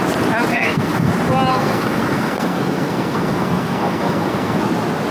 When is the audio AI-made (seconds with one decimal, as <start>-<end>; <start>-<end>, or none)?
0.5-1.1; 1.5-4.6